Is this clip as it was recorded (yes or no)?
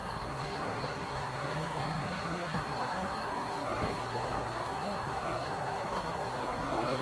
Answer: no